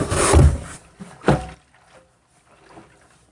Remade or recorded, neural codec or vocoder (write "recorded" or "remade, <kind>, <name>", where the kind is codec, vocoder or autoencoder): recorded